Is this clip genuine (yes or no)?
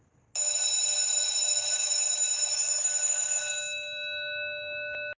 yes